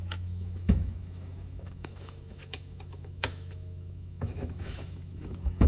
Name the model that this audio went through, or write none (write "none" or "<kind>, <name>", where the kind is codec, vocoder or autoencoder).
autoencoder, DAC-VAE